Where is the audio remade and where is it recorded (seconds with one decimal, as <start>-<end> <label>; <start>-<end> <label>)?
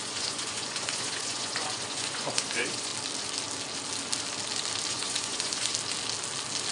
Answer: 0.0-2.9 remade; 2.9-4.9 recorded; 4.9-5.7 remade; 5.7-6.7 recorded